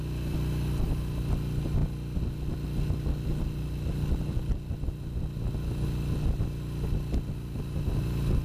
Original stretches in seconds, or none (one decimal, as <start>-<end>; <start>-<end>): 0.0-8.4